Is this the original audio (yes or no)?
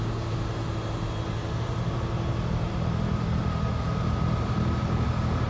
yes